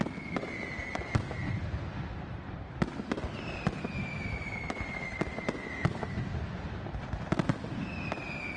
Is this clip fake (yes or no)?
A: no